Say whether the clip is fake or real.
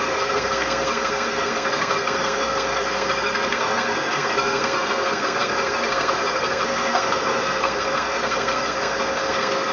fake